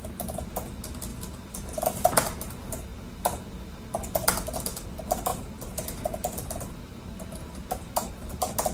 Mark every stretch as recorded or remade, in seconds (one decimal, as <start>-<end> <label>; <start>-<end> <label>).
0.0-8.7 recorded